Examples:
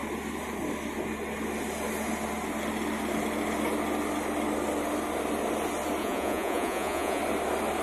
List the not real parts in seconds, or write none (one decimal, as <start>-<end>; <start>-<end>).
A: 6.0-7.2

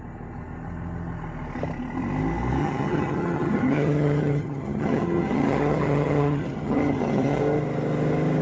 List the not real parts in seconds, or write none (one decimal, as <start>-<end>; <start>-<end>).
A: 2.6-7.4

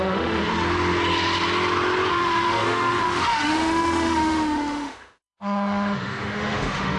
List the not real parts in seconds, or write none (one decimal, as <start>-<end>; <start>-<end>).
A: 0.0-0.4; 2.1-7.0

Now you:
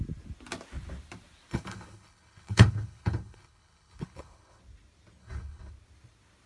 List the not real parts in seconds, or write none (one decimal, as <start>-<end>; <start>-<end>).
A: 1.5-4.6; 5.2-5.7